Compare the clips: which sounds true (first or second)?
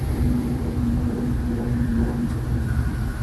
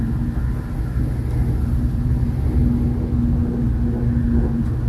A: second